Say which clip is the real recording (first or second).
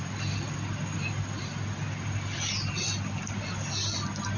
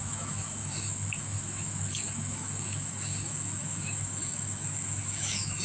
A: first